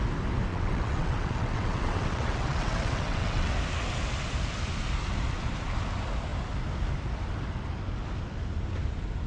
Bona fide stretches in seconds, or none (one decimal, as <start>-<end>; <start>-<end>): 0.0-0.5; 3.5-9.3